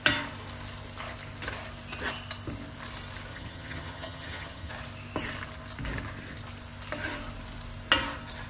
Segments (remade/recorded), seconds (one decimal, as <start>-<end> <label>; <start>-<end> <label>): 0.0-3.3 recorded; 3.3-4.7 remade; 4.7-8.5 recorded